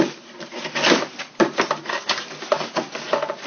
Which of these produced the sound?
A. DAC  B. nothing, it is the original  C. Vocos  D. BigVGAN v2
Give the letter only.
B